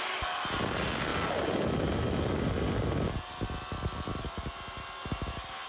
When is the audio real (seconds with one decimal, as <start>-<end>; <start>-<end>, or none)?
0.0-5.7